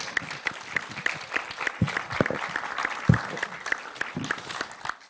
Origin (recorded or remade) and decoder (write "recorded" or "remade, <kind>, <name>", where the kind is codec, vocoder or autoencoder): recorded